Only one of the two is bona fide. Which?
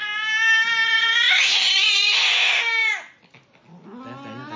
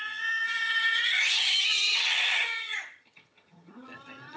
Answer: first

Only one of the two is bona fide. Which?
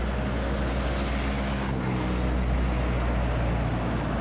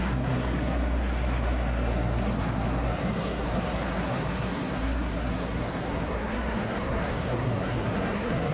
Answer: first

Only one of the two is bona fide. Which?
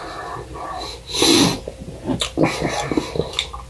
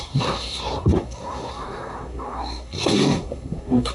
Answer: first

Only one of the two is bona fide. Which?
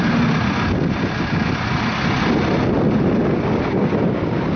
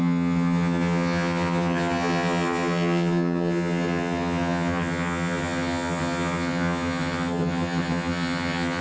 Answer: first